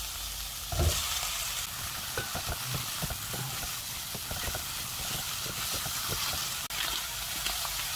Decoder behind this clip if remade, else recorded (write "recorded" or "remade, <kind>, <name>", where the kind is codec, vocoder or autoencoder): recorded